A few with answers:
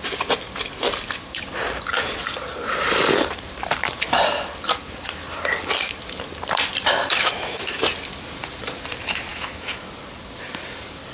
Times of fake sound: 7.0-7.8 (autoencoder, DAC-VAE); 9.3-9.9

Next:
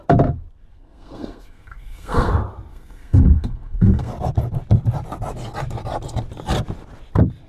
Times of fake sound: 0.7-2.3 (codec, SNAC); 2.7-4.1